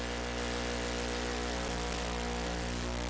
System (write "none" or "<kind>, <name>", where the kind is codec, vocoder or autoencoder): none